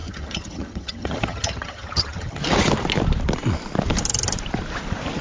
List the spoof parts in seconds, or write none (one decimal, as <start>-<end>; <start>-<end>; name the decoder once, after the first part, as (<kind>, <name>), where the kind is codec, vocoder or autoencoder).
0.0-2.4 (vocoder, HiFi-GAN)